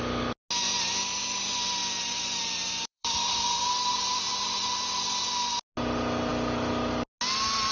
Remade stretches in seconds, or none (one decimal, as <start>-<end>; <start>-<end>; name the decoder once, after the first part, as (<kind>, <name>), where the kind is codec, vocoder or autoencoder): 1.8-4.3 (vocoder, BigVGAN v2)